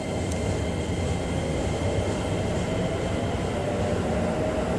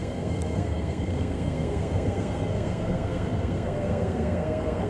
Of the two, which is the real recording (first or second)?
first